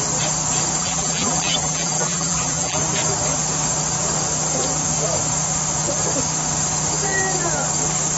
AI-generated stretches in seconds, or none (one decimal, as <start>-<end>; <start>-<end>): 0.8-2.8

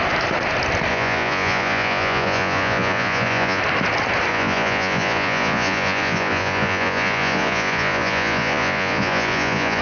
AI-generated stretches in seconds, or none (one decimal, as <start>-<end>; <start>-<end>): 0.9-3.6; 4.3-9.8

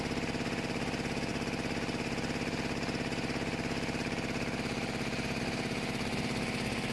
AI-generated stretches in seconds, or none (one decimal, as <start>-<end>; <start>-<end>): none

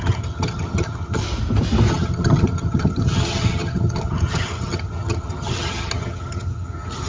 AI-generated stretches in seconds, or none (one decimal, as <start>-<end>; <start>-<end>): 0.0-1.2; 1.9-7.1

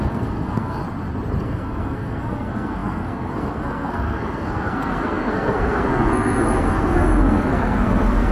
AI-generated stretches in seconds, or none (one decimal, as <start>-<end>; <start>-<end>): 0.0-0.8; 1.4-8.3

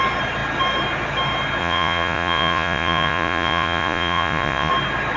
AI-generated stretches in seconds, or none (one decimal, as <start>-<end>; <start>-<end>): 1.6-4.7

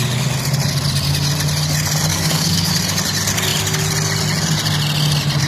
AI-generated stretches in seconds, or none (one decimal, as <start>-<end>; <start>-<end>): 2.1-2.7